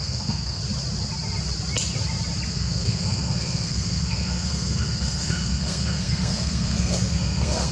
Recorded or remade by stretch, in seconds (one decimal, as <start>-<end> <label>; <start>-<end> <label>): 0.0-0.6 remade; 0.6-2.5 recorded; 2.5-7.7 remade